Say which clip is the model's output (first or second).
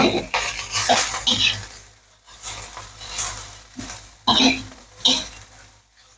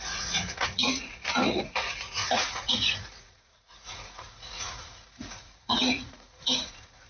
second